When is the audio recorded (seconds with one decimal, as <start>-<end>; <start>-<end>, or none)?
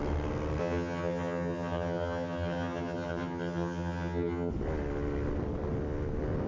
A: 0.0-0.6; 4.5-6.5